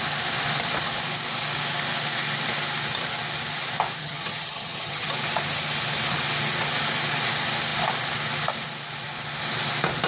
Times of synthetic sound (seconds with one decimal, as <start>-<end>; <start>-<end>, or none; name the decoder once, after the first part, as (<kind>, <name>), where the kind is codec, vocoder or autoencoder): 4.0-5.1 (vocoder, HiFi-GAN)